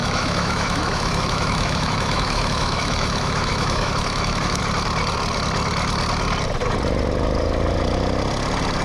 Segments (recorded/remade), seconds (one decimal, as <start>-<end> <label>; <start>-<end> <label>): 0.0-4.6 remade; 4.6-8.8 recorded